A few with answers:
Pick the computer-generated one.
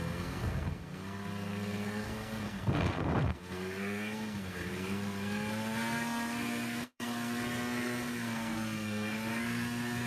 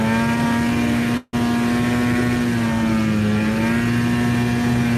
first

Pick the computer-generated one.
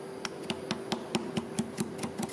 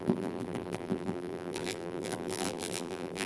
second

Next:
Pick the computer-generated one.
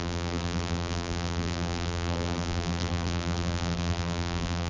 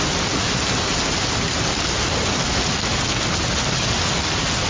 first